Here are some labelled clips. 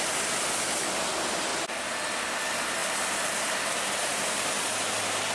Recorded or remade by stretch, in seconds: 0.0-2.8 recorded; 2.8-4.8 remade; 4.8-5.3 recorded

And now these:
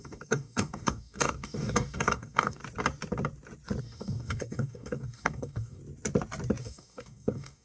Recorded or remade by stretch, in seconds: 0.0-2.6 remade; 2.6-3.8 recorded; 3.8-5.8 remade; 5.8-6.6 recorded; 6.6-7.6 remade